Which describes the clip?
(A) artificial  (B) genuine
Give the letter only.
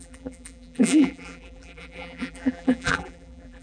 A